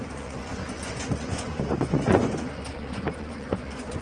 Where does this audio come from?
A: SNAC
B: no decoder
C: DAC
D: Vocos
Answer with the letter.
D